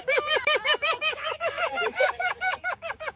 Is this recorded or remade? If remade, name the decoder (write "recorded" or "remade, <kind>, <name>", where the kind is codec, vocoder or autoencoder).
remade, codec, DAC